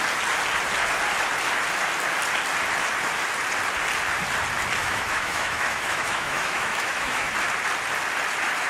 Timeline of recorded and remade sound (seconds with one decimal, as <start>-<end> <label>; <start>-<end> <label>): 0.0-4.8 recorded; 4.8-7.3 remade; 7.3-8.7 recorded